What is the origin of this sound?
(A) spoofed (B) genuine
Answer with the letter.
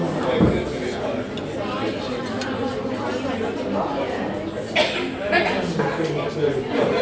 B